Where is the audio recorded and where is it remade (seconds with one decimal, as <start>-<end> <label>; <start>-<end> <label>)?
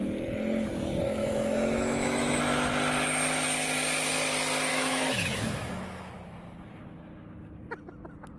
0.0-1.2 recorded; 1.2-2.4 remade; 2.4-4.7 recorded; 4.7-6.1 remade; 6.1-8.4 recorded